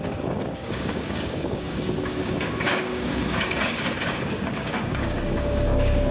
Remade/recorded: remade